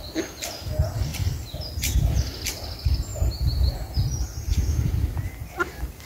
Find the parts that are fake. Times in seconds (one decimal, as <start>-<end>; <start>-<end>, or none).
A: 3.1-3.7